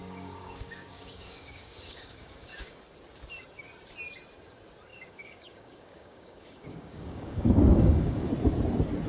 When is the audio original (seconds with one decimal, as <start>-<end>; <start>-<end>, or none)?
2.8-4.9; 8.3-9.1